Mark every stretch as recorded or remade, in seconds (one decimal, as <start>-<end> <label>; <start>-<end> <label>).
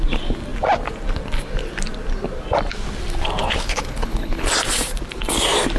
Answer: 0.0-3.4 recorded; 3.4-4.5 remade; 4.5-5.8 recorded